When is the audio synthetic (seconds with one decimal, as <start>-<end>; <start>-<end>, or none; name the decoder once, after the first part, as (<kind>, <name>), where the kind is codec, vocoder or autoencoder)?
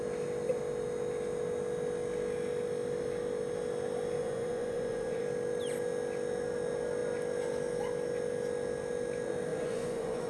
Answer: 4.2-5.2 (vocoder, Vocos); 9.5-10.3